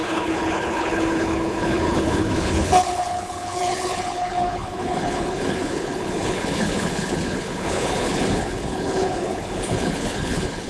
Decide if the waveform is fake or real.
fake